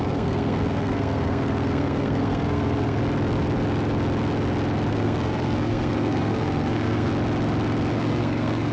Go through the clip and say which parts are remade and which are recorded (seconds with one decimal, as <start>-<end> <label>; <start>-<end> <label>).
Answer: 0.0-3.0 remade; 3.0-4.9 recorded; 4.9-7.1 remade; 7.1-7.9 recorded; 7.9-8.7 remade